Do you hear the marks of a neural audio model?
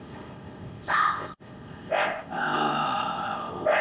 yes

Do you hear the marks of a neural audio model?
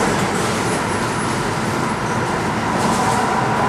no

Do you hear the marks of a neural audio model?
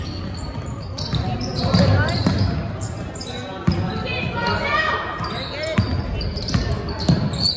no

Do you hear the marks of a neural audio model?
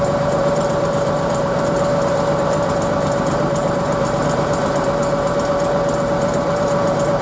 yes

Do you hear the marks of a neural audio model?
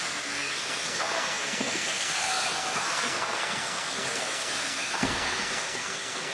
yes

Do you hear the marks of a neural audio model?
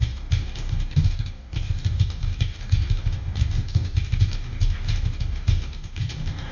yes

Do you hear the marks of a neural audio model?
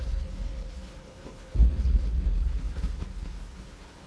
yes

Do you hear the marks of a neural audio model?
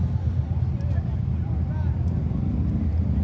no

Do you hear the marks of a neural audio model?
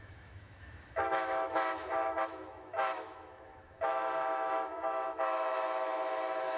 yes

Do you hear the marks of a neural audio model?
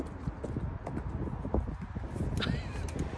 no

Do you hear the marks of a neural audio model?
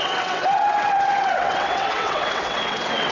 yes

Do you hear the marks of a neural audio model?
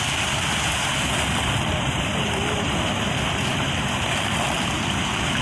no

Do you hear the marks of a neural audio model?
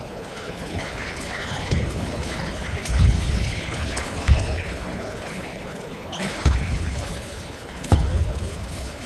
yes